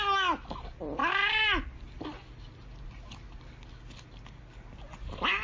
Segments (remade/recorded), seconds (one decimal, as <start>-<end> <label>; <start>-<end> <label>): 0.0-5.4 recorded